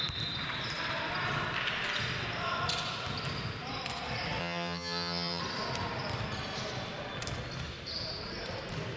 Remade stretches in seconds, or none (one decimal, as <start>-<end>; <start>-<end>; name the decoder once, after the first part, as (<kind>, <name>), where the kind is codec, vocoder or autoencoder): 4.4-5.4 (vocoder, HiFi-GAN)